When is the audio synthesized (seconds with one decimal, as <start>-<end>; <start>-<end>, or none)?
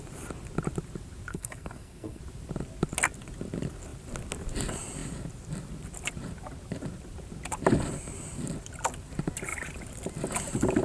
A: 1.3-2.2